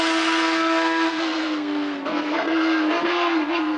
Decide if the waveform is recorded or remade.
remade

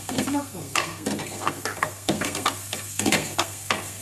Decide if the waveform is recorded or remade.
remade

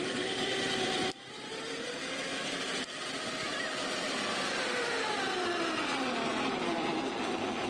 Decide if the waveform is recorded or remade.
recorded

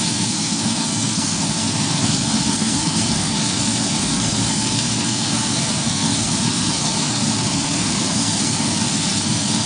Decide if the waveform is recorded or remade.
remade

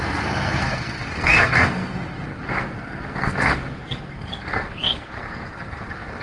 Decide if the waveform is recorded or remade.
remade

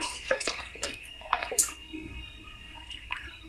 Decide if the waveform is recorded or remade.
remade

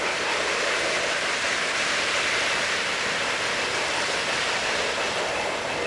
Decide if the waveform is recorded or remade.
recorded